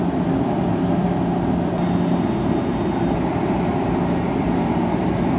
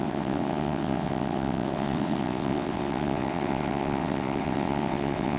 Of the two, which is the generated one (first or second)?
second